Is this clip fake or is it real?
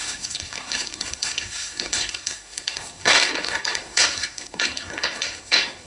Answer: fake